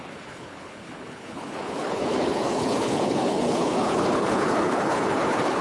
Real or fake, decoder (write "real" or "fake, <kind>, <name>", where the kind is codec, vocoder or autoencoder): fake, codec, HILCodec